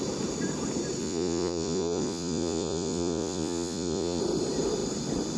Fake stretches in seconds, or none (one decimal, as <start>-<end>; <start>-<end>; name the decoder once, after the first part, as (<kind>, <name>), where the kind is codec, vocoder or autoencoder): 1.0-4.2 (vocoder, Vocos)